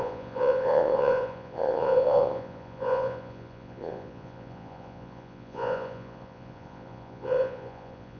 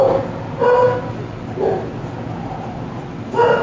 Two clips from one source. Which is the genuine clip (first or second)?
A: second